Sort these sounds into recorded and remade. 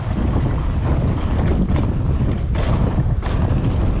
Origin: recorded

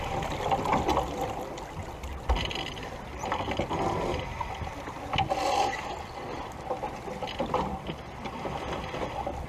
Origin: recorded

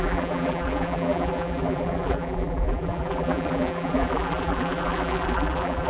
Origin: remade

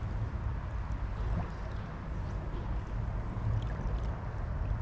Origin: recorded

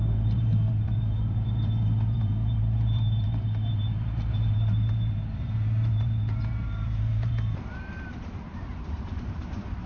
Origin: remade